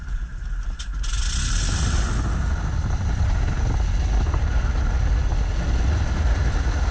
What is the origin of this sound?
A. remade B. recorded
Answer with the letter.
B